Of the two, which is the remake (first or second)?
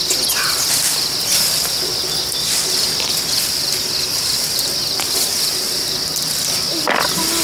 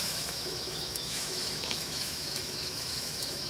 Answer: second